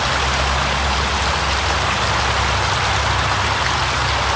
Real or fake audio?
real